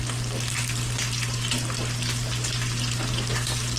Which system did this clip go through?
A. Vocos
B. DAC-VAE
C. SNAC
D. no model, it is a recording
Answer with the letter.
D